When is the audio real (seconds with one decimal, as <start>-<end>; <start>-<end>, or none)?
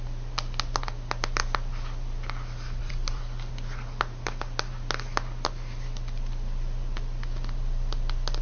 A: 0.0-2.8; 3.5-8.4